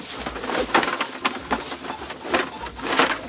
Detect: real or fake real